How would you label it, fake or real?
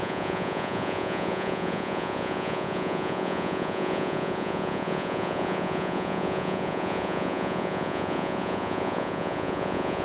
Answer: fake